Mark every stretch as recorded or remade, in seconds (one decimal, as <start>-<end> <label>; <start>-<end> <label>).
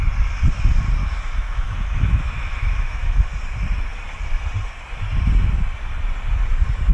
0.0-1.0 recorded; 1.0-3.2 remade; 3.2-6.9 recorded